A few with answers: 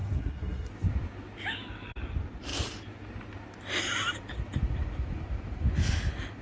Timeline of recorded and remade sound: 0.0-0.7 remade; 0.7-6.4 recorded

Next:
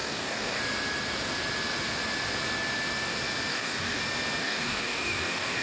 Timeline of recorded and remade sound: 0.0-0.6 remade; 0.6-3.5 recorded; 3.5-4.0 remade; 4.0-4.4 recorded; 4.4-5.6 remade

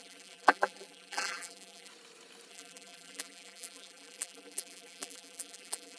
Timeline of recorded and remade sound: 0.0-1.9 remade; 1.9-2.5 recorded; 2.5-6.0 remade

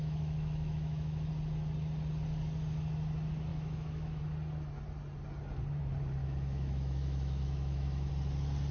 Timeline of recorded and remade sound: 0.0-1.3 remade; 1.3-3.5 recorded; 3.5-4.2 remade; 4.2-6.2 recorded; 6.2-8.1 remade; 8.1-8.7 recorded

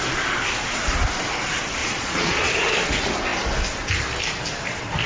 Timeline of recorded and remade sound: 0.0-1.8 recorded; 1.8-2.5 remade; 2.5-5.1 recorded

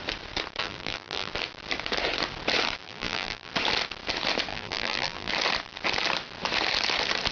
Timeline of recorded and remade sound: 0.0-0.6 recorded; 0.6-1.3 remade; 1.3-2.8 recorded; 2.8-3.5 remade; 3.5-4.5 recorded; 4.5-5.3 remade; 5.3-7.3 recorded